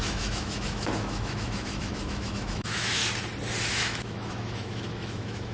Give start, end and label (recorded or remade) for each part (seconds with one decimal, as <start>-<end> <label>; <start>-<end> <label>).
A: 0.0-3.0 remade; 3.0-3.7 recorded; 3.7-5.5 remade